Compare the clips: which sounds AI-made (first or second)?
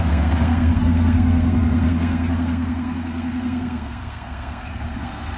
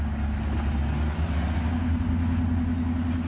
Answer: first